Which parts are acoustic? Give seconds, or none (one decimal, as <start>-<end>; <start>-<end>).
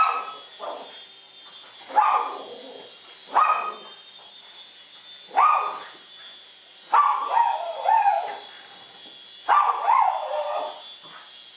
0.0-11.6